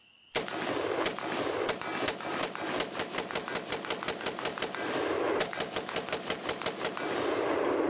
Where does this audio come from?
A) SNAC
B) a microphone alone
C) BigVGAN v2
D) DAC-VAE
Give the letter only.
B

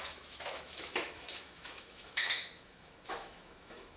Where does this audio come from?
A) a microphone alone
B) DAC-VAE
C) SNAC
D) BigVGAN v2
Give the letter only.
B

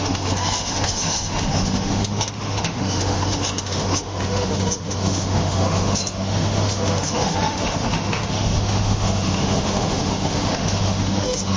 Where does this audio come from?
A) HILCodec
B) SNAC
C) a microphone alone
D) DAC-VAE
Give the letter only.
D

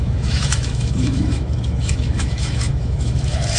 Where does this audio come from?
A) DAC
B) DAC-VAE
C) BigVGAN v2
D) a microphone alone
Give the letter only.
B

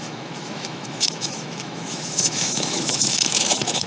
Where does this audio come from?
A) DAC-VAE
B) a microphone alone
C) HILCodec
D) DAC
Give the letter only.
A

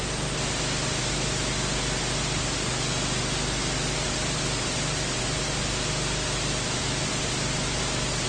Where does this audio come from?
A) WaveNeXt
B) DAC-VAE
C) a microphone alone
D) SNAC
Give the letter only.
C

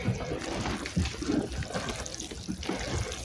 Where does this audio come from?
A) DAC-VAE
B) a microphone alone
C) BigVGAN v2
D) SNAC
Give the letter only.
B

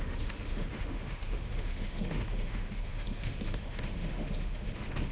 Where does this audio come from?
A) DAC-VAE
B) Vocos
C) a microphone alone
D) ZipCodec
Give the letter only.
A